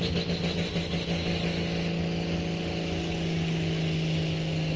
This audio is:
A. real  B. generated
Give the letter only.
A